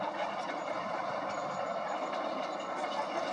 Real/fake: real